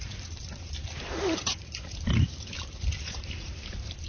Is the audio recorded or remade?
remade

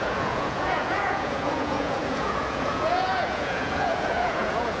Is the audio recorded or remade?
remade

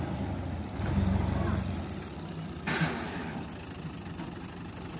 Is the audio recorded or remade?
recorded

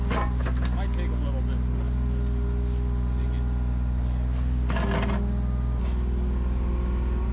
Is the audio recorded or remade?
recorded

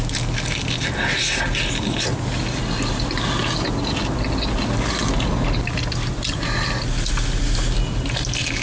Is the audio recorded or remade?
recorded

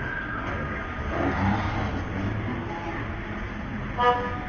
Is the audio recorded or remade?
recorded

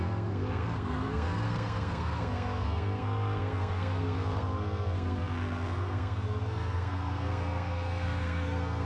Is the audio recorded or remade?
remade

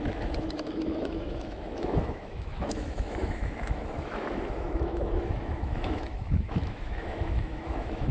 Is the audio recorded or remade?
remade